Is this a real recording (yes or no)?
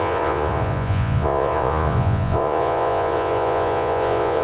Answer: no